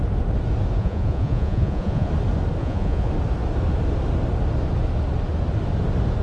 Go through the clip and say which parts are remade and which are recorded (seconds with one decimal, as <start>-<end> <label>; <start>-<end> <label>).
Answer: 0.0-0.8 recorded; 0.8-2.1 remade; 2.1-2.6 recorded; 2.6-3.1 remade; 3.1-6.2 recorded